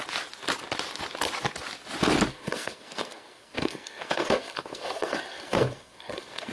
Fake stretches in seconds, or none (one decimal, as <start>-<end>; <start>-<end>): 2.3-6.5